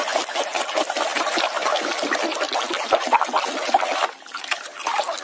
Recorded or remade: recorded